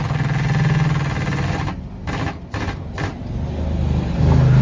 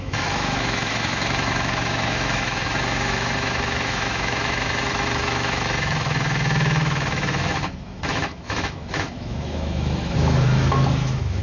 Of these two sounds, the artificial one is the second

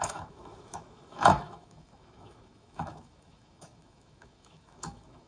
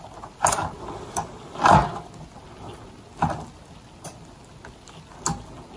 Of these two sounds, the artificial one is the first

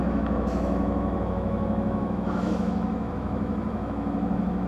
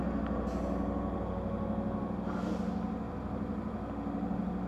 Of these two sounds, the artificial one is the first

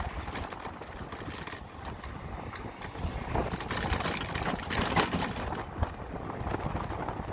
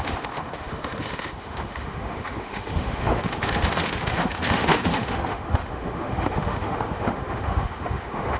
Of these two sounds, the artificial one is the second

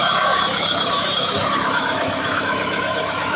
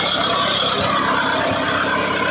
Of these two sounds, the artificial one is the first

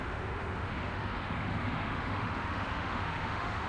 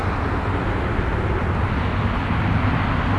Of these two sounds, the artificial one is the first